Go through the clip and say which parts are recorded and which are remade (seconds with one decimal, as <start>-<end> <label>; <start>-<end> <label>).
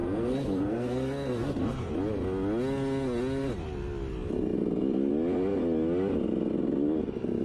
0.0-1.9 remade; 1.9-7.4 recorded